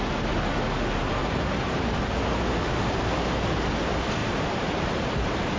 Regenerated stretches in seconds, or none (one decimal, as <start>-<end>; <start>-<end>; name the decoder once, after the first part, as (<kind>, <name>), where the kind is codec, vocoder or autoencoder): 1.2-1.8 (vocoder, BigVGAN v2); 4.2-5.6